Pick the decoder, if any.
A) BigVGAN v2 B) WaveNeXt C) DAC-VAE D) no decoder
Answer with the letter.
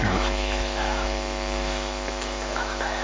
C